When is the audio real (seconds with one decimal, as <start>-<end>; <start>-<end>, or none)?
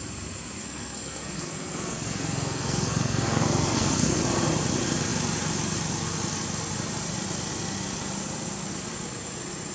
0.0-0.6; 4.2-9.7